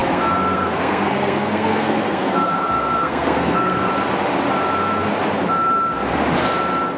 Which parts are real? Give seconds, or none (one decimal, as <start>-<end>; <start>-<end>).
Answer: 3.9-7.0